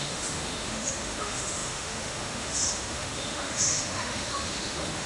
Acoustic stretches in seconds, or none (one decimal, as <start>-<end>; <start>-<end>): none